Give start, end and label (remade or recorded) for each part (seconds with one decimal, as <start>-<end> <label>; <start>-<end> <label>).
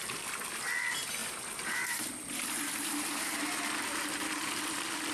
0.0-1.2 recorded; 1.2-3.4 remade; 3.4-5.1 recorded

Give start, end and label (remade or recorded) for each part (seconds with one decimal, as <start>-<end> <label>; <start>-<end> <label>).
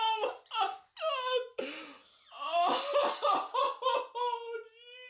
0.0-5.1 recorded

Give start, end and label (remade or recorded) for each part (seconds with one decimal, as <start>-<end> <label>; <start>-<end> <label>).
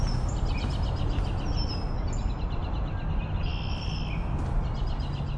0.0-5.4 recorded